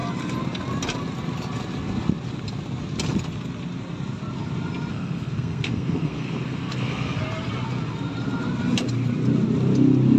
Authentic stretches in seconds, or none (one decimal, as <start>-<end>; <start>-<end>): 0.0-4.9; 7.2-10.2